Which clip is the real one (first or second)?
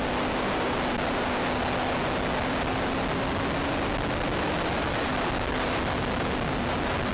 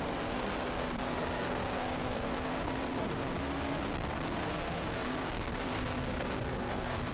first